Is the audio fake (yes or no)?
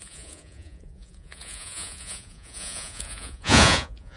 yes